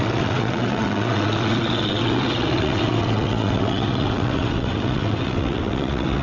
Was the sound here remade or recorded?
remade